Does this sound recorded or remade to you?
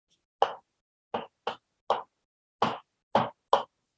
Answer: recorded